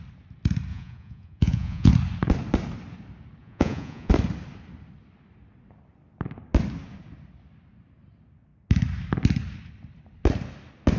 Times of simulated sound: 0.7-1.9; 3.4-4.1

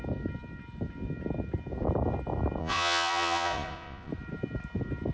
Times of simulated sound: 2.6-4.1

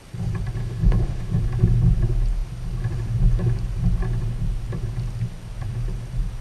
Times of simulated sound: 0.6-1.4

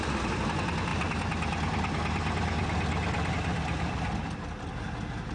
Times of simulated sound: none

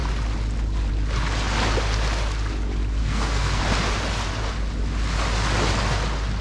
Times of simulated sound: 3.0-3.6

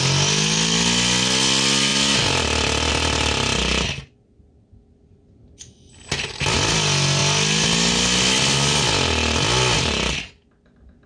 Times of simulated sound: none